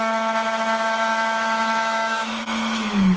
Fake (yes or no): yes